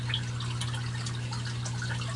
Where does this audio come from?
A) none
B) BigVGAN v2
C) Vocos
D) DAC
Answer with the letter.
A